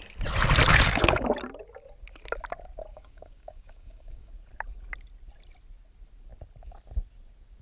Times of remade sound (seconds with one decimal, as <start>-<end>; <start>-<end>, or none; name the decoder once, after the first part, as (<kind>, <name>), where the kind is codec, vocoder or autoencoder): 0.7-1.3 (codec, DAC); 2.9-4.3